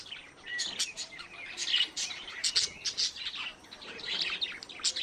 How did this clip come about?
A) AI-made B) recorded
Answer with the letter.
B